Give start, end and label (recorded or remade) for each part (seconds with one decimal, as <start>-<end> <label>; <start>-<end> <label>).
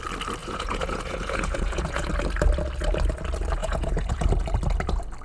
0.0-0.4 recorded; 0.4-2.1 remade; 2.1-3.6 recorded; 3.6-4.3 remade; 4.3-5.2 recorded